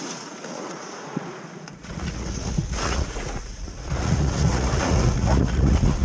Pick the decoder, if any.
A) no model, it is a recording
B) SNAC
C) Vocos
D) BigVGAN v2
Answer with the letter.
C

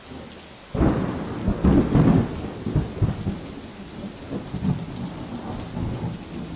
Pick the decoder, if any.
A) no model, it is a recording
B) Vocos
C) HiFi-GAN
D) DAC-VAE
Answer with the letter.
A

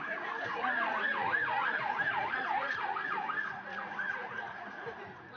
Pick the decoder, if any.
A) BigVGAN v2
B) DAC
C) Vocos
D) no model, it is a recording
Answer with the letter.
C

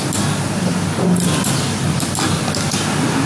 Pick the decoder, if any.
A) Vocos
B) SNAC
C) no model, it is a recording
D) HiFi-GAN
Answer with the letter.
C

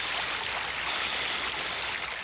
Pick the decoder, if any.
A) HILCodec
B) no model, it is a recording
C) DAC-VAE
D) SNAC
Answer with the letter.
B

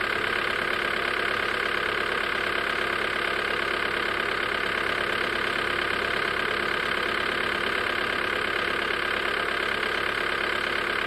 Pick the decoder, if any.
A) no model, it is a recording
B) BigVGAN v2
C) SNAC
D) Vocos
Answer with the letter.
A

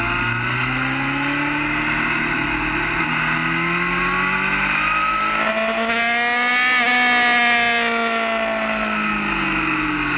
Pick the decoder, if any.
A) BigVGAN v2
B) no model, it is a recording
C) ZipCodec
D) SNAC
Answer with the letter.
B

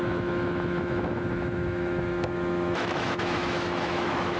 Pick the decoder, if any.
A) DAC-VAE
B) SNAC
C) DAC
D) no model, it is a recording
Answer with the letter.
A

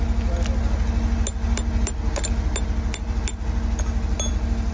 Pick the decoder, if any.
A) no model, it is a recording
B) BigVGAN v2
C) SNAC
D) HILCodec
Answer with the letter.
A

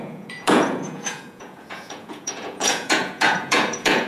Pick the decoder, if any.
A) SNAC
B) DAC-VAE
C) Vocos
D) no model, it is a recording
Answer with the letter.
C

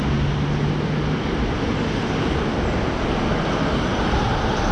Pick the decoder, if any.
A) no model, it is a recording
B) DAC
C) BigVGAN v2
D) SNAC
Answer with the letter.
A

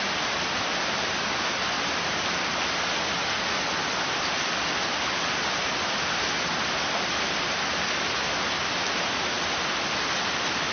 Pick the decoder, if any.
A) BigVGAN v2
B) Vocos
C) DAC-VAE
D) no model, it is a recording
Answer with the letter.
D